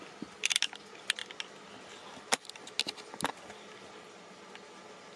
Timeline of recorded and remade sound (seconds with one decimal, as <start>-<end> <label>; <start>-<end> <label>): 0.0-5.2 recorded